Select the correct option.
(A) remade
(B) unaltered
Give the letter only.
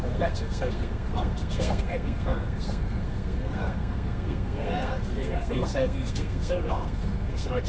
A